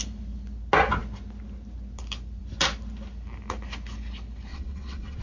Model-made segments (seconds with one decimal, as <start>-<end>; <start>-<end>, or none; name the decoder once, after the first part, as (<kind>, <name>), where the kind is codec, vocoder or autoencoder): 4.5-5.2 (vocoder, WaveNeXt)